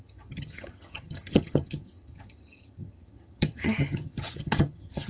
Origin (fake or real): fake